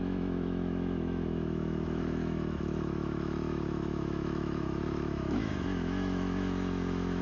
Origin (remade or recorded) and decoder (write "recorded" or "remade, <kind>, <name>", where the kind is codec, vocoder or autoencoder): remade, autoencoder, DAC-VAE